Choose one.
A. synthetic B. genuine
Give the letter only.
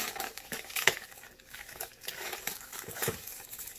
A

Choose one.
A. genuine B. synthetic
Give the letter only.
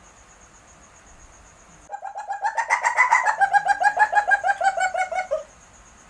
A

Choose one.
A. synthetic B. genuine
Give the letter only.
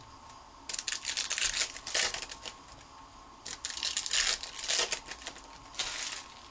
B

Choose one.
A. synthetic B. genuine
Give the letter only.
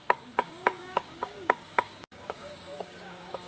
A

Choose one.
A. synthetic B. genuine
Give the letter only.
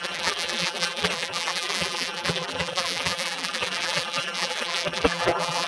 A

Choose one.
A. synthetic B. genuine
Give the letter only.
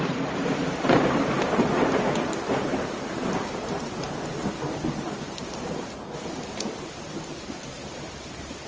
A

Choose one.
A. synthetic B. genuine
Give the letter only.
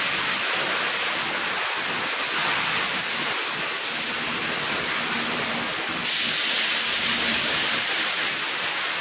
B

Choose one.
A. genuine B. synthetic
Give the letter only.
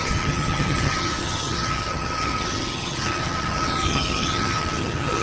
B